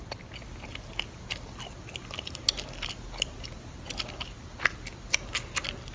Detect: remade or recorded recorded